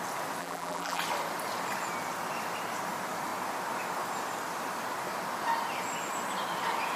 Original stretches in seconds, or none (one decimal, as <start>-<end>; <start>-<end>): 0.0-0.4; 1.0-7.0